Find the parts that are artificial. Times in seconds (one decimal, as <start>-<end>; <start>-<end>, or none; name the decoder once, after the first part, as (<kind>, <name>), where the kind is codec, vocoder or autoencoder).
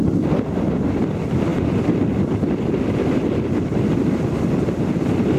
1.5-2.8 (vocoder, BigVGAN v2)